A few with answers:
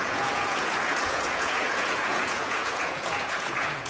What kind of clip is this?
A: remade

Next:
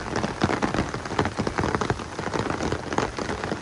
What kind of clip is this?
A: recorded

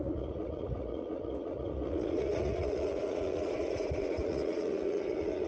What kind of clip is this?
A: remade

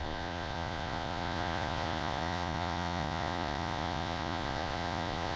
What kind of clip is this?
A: remade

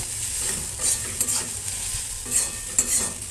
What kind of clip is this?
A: recorded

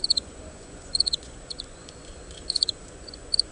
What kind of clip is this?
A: remade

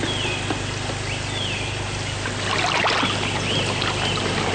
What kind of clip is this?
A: recorded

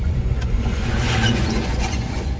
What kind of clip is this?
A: remade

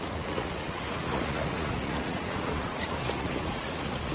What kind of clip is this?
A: remade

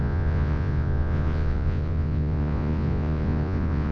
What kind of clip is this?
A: remade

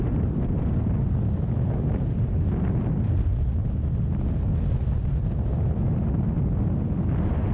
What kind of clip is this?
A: recorded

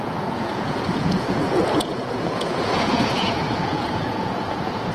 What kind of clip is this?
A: remade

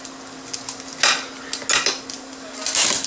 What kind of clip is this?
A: recorded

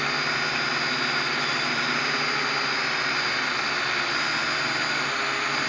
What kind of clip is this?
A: recorded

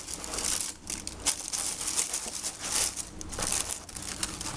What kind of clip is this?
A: recorded